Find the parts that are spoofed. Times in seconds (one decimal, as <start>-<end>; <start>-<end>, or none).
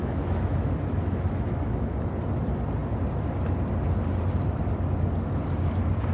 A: 0.0-1.9